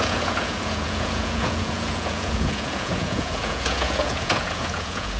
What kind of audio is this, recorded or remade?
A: remade